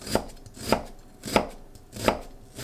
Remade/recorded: recorded